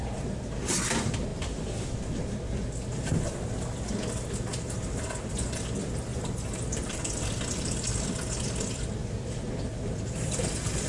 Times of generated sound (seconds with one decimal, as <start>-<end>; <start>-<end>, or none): 6.1-7.0